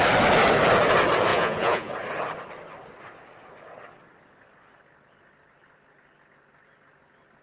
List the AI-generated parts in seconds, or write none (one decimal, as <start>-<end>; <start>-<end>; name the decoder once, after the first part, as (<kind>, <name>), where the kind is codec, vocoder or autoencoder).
1.3-1.9 (vocoder, Vocos)